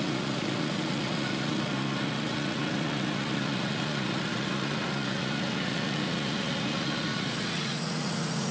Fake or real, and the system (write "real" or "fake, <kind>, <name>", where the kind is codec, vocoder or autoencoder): fake, vocoder, Vocos